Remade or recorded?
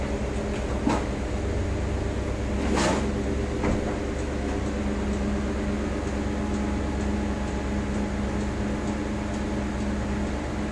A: recorded